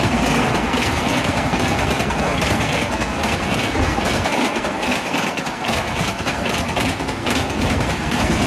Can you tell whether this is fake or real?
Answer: fake